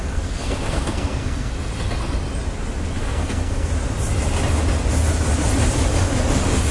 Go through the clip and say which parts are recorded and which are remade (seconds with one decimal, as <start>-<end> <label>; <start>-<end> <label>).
0.0-1.5 remade; 1.5-3.0 recorded; 3.0-3.7 remade; 3.7-6.7 recorded